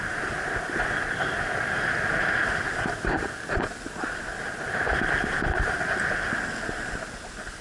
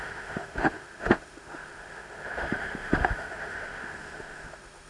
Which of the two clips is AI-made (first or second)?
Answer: second